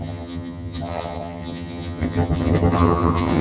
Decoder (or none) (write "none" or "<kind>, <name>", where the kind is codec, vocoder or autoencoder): vocoder, HiFi-GAN